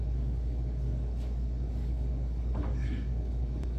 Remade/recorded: remade